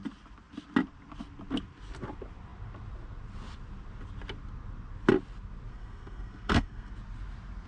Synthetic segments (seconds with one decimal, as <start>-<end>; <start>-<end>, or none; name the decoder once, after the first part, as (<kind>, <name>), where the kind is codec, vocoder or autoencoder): 5.7-6.9 (codec, SNAC)